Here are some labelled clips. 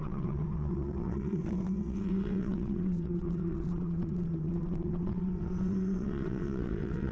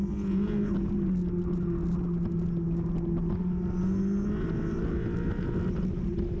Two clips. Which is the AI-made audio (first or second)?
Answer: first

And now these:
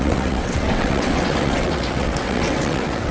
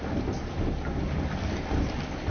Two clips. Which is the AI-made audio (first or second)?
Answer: first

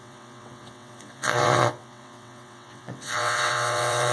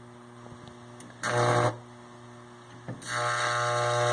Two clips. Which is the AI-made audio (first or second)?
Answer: first